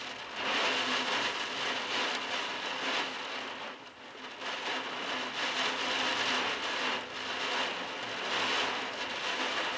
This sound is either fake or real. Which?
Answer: real